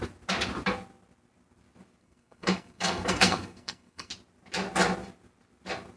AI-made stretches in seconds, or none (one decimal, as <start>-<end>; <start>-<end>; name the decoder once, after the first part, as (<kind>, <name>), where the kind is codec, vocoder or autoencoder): 2.0-4.1 (codec, SNAC)